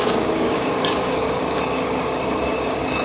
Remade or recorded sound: remade